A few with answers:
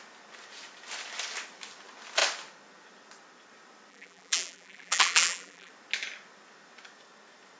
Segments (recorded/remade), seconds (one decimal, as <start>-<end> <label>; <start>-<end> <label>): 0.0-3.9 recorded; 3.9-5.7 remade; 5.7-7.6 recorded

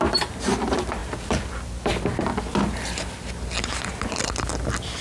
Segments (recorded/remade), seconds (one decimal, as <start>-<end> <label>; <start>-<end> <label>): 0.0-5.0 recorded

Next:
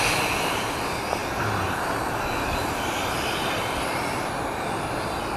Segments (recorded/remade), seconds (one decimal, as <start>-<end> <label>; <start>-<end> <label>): 0.0-5.4 recorded